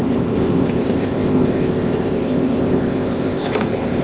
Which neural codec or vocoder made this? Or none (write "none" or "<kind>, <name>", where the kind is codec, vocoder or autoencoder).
codec, ZipCodec